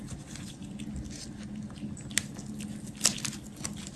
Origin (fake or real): real